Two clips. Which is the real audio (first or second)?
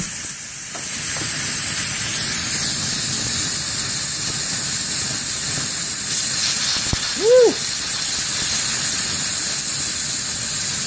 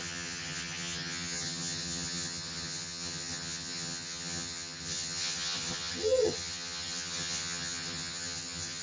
first